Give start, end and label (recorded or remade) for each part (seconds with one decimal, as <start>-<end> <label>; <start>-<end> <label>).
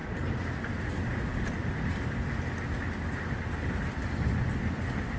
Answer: 0.0-5.2 recorded